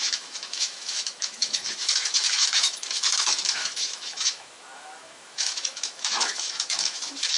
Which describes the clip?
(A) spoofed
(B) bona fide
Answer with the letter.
A